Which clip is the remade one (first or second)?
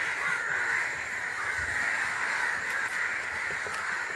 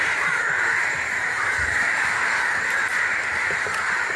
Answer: second